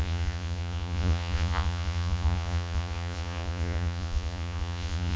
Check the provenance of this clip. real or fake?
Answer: fake